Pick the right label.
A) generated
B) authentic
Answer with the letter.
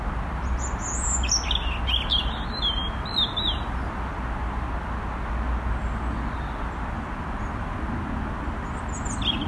B